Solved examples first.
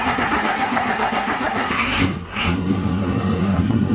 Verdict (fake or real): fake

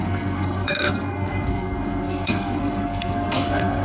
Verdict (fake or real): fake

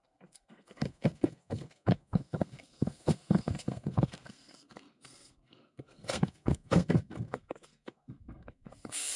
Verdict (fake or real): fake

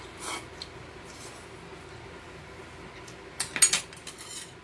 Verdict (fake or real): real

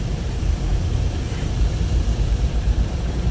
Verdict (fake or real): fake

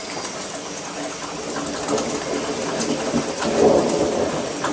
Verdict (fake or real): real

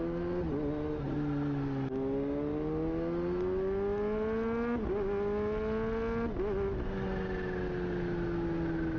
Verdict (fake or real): real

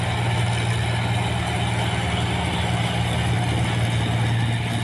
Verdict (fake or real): real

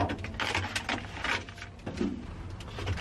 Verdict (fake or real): real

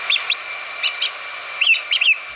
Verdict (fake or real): real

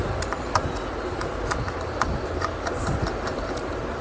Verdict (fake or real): real